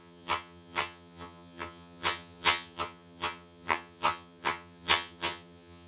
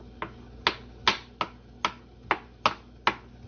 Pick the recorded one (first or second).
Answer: second